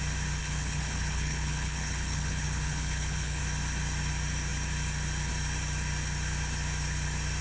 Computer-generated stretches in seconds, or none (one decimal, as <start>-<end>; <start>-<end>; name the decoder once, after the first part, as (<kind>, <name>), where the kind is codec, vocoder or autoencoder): 0.4-3.4 (codec, HILCodec)